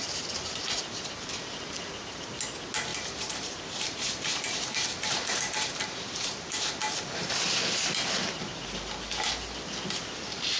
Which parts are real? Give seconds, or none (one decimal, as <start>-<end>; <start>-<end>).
0.0-2.9; 6.6-10.6